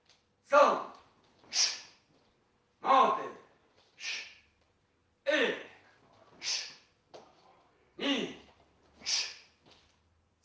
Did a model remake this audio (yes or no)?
no